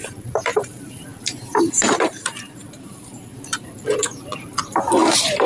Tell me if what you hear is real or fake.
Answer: fake